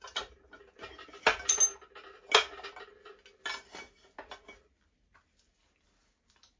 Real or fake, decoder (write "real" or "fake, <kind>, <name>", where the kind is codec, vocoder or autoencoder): real